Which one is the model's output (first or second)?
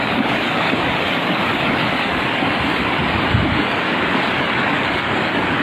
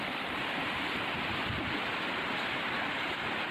first